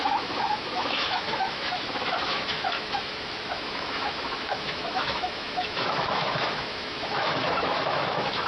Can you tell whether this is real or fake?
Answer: fake